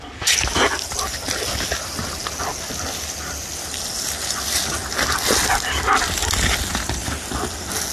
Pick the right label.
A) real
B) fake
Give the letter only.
A